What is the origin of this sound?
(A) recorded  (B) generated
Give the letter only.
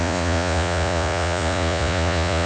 B